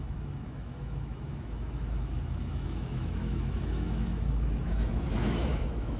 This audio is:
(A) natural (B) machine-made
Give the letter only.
B